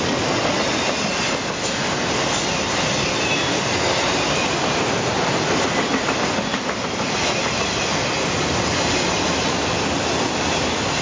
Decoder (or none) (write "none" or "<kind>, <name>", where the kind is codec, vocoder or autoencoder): none